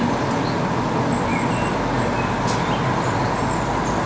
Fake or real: real